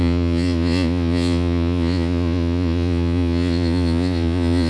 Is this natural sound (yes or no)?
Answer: no